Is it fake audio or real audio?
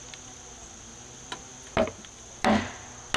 real